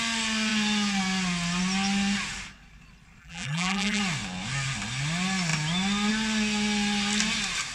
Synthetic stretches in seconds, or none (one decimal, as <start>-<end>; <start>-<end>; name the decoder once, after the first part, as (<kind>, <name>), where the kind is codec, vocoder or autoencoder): 3.2-4.0 (vocoder, BigVGAN v2)